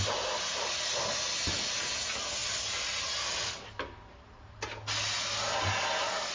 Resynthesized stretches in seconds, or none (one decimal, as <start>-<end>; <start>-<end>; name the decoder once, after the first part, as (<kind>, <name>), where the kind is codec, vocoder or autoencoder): none